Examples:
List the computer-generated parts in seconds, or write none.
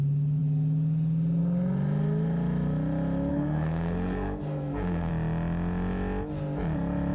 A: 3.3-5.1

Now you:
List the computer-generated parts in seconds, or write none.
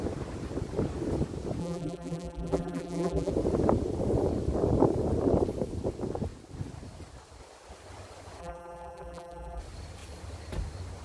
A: 1.6-3.3; 8.4-9.6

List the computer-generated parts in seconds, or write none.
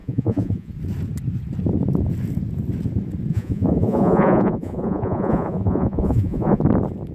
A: 0.0-0.7; 3.3-6.6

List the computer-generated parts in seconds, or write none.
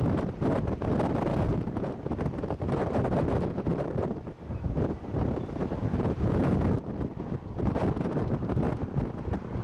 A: 1.3-1.9; 5.8-6.5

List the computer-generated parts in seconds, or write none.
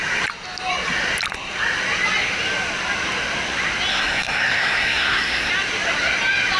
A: 3.9-5.5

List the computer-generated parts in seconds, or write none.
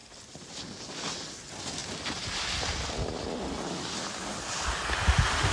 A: none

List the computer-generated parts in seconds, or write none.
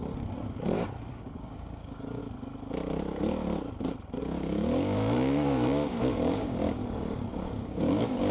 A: 1.1-2.2; 4.2-6.8; 7.4-8.3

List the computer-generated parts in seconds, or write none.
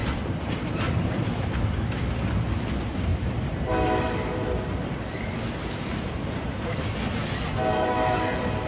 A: 0.0-1.5; 3.1-3.7; 5.6-7.0